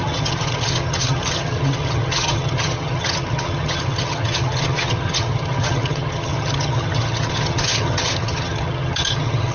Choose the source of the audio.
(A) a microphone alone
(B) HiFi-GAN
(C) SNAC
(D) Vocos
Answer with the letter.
B